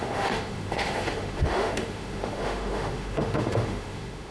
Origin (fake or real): fake